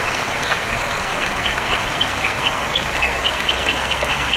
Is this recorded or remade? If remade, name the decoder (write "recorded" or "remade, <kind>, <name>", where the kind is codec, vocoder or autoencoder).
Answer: remade, codec, SNAC